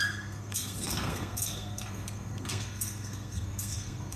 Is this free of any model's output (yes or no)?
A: no